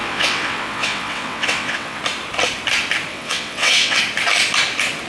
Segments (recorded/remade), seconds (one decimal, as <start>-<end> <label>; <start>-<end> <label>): 0.0-2.0 remade; 2.0-3.1 recorded; 3.1-4.0 remade; 4.0-5.1 recorded